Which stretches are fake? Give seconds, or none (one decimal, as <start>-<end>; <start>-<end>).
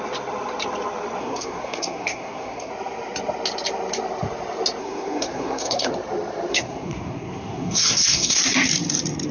1.2-2.7; 4.8-5.9; 6.5-8.4